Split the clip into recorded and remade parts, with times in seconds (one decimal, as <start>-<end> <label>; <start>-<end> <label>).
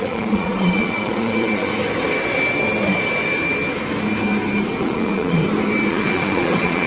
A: 0.0-1.7 remade; 1.7-4.8 recorded; 4.8-5.4 remade; 5.4-5.9 recorded; 5.9-6.9 remade